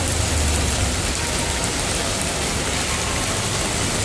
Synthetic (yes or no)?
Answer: no